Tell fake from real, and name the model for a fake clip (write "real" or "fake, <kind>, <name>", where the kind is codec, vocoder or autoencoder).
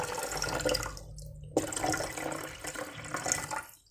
real